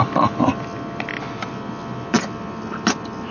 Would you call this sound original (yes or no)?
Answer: yes